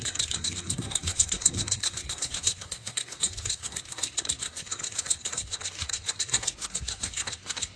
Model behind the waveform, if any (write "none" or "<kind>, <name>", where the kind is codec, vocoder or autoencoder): codec, SNAC